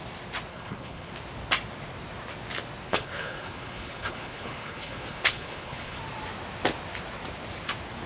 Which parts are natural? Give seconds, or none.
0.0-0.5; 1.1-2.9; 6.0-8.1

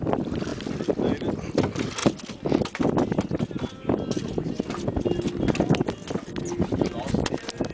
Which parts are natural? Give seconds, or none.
0.0-7.7

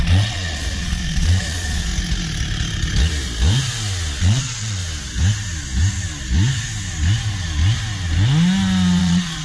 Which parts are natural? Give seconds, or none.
1.9-4.2; 4.8-9.0

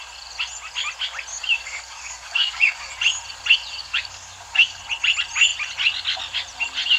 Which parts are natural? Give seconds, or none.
0.0-1.3; 2.9-3.8; 4.8-7.0

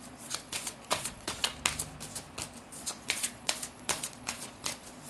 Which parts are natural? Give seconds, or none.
1.4-2.8